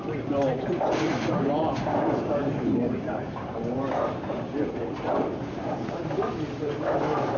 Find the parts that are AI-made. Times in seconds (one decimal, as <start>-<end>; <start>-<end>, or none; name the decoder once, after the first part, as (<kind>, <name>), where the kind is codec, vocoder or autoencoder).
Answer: 0.0-7.4 (vocoder, BigVGAN v2)